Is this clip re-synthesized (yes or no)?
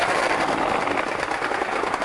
no